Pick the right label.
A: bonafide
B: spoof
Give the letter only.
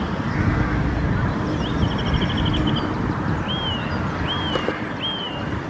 A